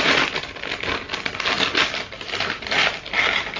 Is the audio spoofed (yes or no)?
no